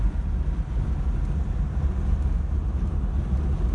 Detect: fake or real real